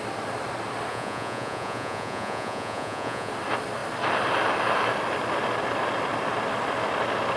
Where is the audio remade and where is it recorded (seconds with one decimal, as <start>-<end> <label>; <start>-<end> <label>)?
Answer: 0.0-0.9 recorded; 0.9-3.3 remade; 3.3-7.4 recorded